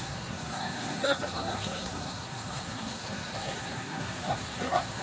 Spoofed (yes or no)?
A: yes